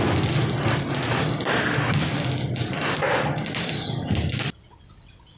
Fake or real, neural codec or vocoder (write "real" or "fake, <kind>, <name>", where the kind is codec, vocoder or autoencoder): real